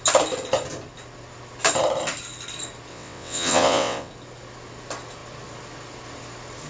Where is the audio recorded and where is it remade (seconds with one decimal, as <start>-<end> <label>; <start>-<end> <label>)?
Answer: 0.0-2.9 recorded; 2.9-4.1 remade; 4.1-6.7 recorded

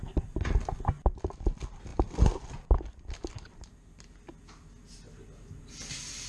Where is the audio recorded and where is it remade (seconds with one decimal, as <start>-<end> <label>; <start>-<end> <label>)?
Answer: 0.0-6.3 recorded

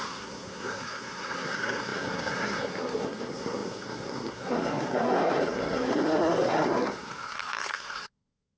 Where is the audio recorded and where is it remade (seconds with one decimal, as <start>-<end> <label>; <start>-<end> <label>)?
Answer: 0.0-8.6 remade

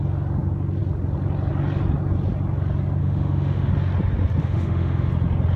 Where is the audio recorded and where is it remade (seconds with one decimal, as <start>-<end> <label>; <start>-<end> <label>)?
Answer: 0.0-3.0 recorded; 3.0-3.7 remade; 3.7-4.4 recorded; 4.4-5.1 remade; 5.1-5.6 recorded